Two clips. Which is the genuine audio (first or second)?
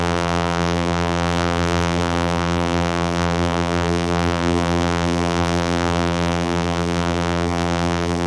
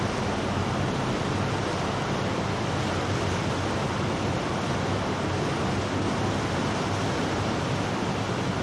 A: second